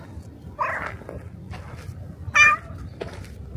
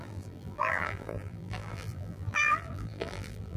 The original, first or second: first